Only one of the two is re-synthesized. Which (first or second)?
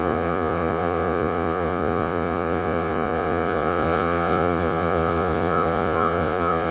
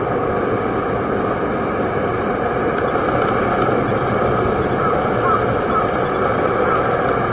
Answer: first